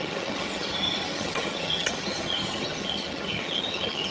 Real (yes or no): no